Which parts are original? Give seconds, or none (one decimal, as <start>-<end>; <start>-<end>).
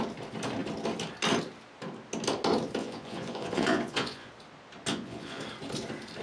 0.0-2.8; 4.3-4.9; 5.4-6.2